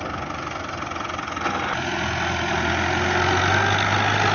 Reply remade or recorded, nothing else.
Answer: recorded